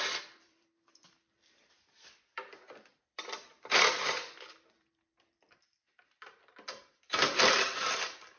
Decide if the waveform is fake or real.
fake